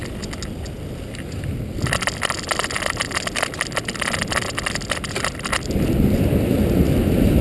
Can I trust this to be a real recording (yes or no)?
yes